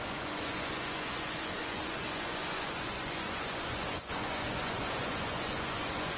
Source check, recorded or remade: remade